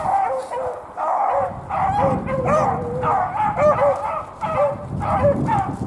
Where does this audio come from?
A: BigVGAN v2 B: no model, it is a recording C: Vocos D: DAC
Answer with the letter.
B